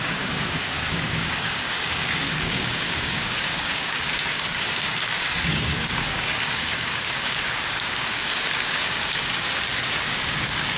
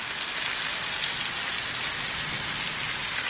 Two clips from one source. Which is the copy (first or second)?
first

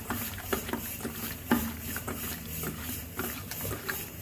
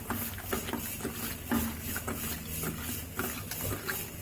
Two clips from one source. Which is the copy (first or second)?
first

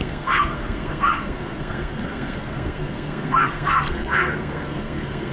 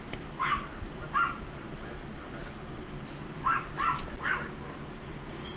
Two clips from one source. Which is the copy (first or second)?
first